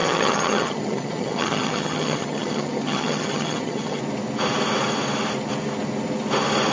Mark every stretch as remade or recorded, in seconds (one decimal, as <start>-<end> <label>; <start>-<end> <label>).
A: 0.0-4.0 remade; 4.0-6.7 recorded